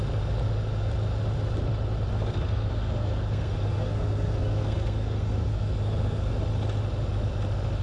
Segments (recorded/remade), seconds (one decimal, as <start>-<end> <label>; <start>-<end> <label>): 0.0-2.1 recorded; 2.1-6.3 remade; 6.3-7.8 recorded